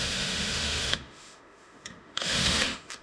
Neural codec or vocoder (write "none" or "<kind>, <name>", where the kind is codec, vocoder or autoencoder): autoencoder, DAC-VAE